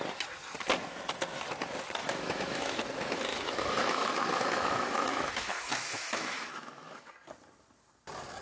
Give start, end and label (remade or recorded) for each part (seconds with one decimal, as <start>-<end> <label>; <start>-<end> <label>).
0.0-2.0 recorded; 2.0-2.8 remade; 2.8-3.3 recorded; 3.3-7.1 remade; 7.1-8.4 recorded